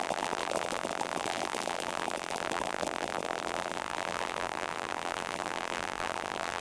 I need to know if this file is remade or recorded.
remade